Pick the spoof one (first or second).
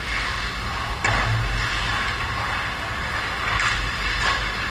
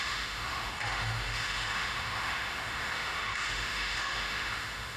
second